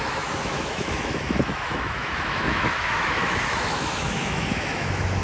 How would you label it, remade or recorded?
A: remade